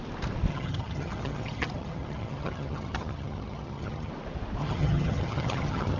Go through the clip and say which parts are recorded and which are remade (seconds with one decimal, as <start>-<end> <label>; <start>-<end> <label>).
0.0-0.5 recorded; 0.5-4.1 remade; 4.1-4.6 recorded; 4.6-6.0 remade